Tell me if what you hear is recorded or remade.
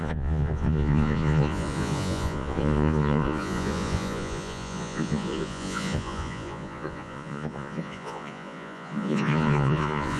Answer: remade